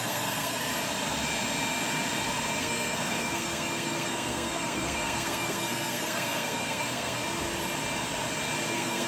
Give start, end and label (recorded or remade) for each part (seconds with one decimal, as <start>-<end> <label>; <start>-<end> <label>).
0.0-0.7 remade; 0.7-2.6 recorded; 2.6-7.2 remade; 7.2-8.7 recorded; 8.7-9.1 remade